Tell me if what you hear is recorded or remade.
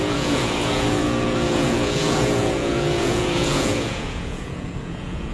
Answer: remade